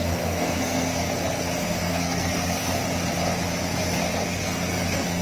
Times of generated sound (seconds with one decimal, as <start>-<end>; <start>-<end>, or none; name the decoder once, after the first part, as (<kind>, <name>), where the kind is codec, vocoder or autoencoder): 0.0-2.8 (codec, SNAC); 3.6-5.2

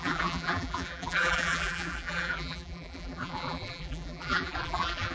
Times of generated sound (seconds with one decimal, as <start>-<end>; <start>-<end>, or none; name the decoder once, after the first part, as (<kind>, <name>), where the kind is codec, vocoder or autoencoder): 0.0-5.1 (vocoder, BigVGAN v2)

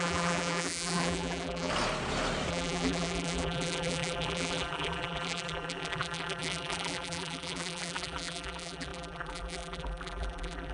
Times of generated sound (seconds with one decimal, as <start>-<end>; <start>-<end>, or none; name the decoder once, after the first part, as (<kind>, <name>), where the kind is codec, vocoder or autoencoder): 0.0-1.7 (vocoder, BigVGAN v2); 2.5-10.7

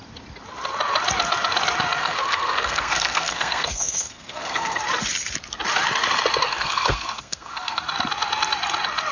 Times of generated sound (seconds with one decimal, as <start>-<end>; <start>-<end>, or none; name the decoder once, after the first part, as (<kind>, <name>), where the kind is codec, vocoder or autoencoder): 2.0-4.8 (codec, SNAC); 6.5-7.8